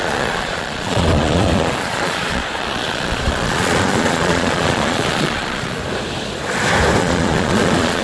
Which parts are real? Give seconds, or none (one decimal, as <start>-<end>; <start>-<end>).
5.8-7.0